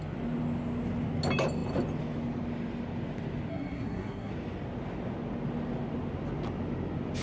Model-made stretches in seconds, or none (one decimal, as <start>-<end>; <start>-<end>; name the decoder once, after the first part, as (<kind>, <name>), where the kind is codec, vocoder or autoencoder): 3.5-4.3 (codec, SNAC)